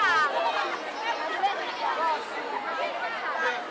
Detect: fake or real real